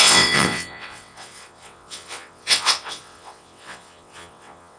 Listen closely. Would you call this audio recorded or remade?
remade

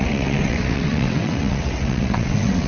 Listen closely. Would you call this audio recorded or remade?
remade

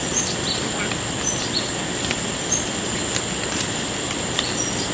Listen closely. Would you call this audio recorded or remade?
recorded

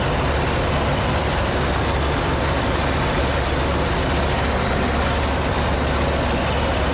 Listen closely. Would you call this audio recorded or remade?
recorded